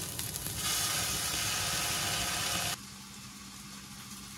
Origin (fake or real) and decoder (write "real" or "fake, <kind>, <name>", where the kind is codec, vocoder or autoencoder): real